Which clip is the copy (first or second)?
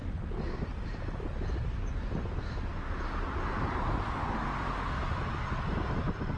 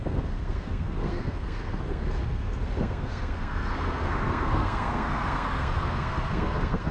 second